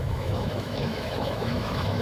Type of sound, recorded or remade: remade